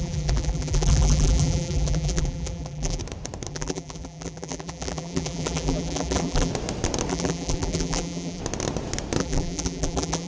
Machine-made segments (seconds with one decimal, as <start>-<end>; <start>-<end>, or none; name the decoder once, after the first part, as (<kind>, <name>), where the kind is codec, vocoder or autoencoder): 0.0-3.0 (vocoder, BigVGAN v2); 3.5-6.5; 7.1-8.4; 9.2-10.3